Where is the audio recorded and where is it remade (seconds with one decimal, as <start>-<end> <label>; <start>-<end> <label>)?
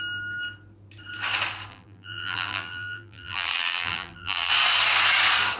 0.0-1.7 recorded; 1.7-4.5 remade; 4.5-5.6 recorded